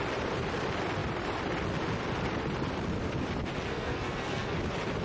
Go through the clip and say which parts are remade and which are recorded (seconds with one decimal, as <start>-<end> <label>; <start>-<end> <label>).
0.0-3.7 recorded; 3.7-4.6 remade; 4.6-5.0 recorded